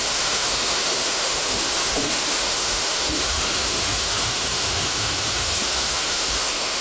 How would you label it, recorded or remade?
remade